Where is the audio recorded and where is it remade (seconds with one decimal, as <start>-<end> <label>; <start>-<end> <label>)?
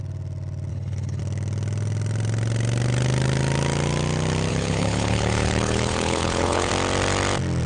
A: 0.0-0.7 recorded; 0.7-1.2 remade; 1.2-4.5 recorded; 4.5-6.7 remade; 6.7-7.7 recorded